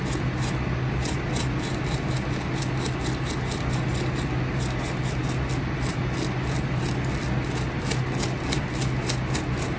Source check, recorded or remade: recorded